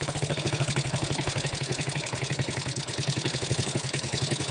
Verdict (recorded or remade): remade